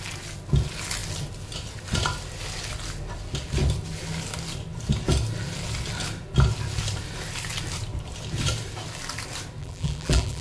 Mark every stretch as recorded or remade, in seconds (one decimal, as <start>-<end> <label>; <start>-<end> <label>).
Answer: 0.0-9.6 recorded; 9.6-10.4 remade